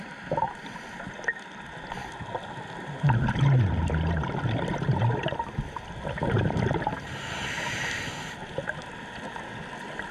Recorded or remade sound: recorded